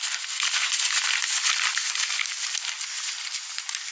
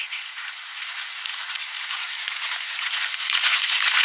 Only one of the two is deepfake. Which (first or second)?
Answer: second